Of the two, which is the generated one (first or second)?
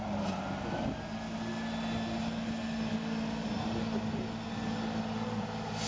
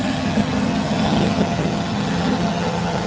second